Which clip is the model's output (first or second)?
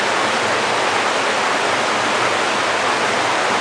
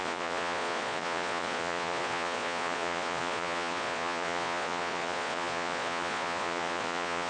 second